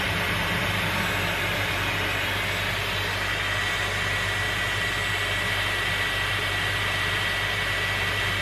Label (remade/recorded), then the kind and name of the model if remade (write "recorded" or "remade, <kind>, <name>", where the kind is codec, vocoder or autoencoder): recorded